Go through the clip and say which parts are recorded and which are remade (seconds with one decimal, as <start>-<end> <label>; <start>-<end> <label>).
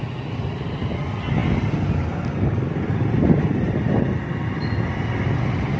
0.0-5.8 recorded